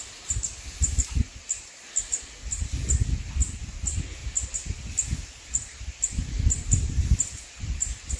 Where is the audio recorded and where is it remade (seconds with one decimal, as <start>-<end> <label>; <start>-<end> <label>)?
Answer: 0.0-8.2 recorded